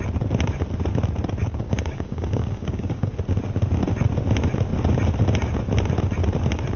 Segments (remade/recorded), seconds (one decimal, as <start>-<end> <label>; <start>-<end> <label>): 0.0-1.4 recorded; 1.4-3.1 remade; 3.1-6.8 recorded